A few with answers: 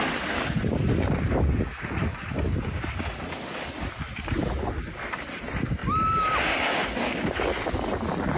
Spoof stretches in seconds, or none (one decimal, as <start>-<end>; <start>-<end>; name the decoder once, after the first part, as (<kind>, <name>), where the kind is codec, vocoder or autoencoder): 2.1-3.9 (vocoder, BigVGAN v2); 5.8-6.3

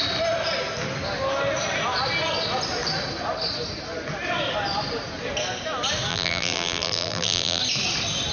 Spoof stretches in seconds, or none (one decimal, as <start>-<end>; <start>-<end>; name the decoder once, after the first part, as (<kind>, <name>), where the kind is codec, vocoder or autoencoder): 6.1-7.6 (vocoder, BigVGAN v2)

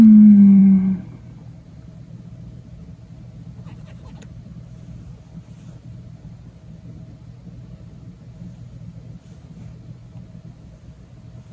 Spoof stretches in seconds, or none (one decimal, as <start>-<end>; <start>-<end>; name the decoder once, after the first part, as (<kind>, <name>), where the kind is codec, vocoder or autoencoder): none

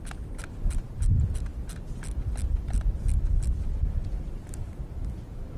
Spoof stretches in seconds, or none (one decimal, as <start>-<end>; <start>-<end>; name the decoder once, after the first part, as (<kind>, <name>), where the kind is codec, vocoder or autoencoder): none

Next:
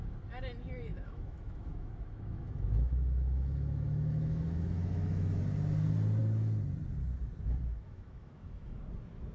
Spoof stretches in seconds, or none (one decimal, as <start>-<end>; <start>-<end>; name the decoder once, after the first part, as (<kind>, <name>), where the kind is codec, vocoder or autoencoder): 0.9-5.4 (autoencoder, DAC-VAE); 7.7-8.8

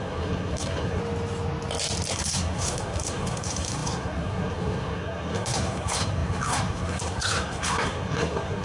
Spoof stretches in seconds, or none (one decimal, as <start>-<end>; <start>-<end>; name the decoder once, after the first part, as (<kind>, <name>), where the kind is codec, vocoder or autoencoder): 0.0-1.0 (codec, SNAC); 2.1-8.6

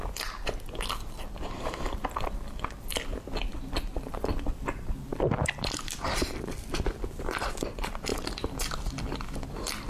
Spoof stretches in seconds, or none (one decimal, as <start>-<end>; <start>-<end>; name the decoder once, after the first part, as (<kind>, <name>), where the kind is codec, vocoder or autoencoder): 1.5-3.1 (vocoder, BigVGAN v2); 3.7-8.1